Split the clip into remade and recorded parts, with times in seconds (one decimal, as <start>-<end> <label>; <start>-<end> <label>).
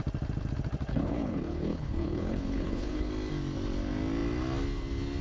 0.0-0.9 recorded; 0.9-3.1 remade; 3.1-5.2 recorded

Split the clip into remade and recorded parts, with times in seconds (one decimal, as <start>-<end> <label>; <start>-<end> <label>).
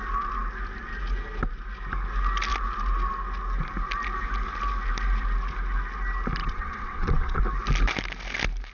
0.0-6.4 recorded; 6.4-7.4 remade; 7.4-8.7 recorded